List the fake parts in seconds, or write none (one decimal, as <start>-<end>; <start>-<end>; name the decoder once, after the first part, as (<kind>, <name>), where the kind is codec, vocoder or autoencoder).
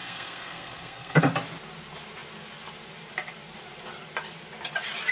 0.0-1.2 (codec, SNAC)